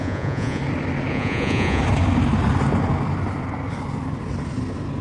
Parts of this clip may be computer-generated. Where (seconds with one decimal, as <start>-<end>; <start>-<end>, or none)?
0.0-0.6; 1.1-1.8